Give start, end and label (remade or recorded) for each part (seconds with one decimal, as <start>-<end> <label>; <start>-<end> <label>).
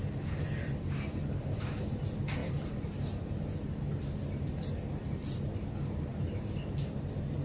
0.0-7.4 recorded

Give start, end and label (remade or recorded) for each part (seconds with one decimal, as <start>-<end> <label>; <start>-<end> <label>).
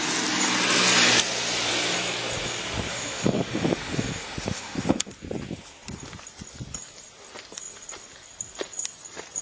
0.0-2.9 recorded; 2.9-5.1 remade; 5.1-9.4 recorded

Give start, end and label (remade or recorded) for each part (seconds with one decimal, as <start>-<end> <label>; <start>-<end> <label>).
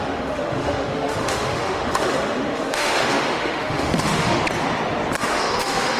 0.0-4.4 remade; 4.4-5.2 recorded; 5.2-6.0 remade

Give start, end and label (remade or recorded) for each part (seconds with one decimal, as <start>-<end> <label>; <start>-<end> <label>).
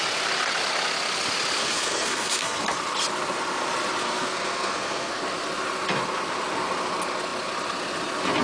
0.0-1.6 recorded; 1.6-2.6 remade; 2.6-4.0 recorded; 4.0-5.2 remade; 5.2-8.4 recorded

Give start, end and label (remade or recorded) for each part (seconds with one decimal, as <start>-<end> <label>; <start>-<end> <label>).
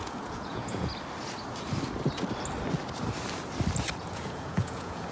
0.0-0.9 remade; 0.9-4.0 recorded; 4.0-5.1 remade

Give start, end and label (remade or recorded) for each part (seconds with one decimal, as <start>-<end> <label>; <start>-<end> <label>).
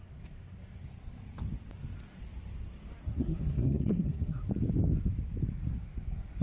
0.0-3.0 recorded; 3.0-4.4 remade; 4.4-6.4 recorded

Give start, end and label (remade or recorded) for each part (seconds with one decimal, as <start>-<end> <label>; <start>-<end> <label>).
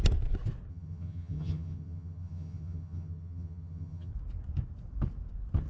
0.0-0.7 recorded; 0.7-4.1 remade; 4.1-5.7 recorded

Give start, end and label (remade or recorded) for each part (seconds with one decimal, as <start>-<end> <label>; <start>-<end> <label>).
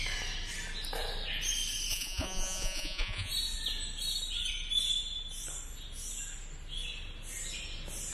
0.0-1.9 recorded; 1.9-3.3 remade; 3.3-8.1 recorded